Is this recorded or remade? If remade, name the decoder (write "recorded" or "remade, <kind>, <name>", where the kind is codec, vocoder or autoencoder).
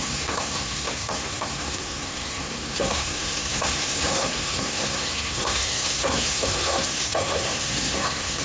remade, codec, SNAC